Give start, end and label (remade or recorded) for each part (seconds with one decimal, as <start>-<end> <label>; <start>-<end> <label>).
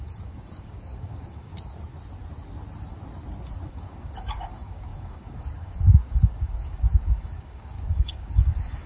0.0-1.5 remade; 1.5-3.7 recorded; 3.7-8.9 remade